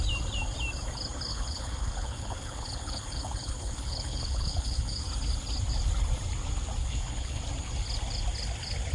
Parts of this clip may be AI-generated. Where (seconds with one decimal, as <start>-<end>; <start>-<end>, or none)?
1.3-5.0; 6.8-7.4